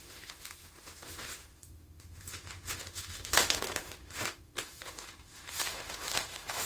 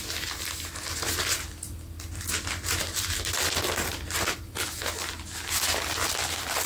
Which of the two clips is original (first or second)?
second